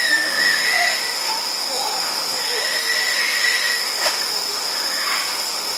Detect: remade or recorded remade